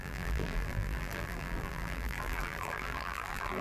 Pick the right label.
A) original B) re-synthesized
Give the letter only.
B